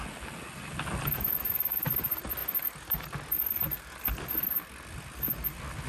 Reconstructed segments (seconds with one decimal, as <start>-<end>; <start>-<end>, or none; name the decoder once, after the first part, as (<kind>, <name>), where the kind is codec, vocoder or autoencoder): none